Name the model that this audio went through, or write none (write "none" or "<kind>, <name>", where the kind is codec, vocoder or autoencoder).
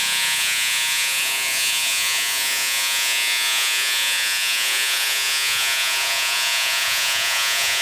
vocoder, Vocos